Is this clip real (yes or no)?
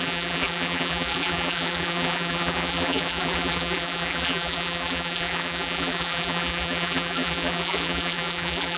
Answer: no